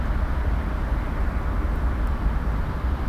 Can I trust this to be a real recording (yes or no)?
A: yes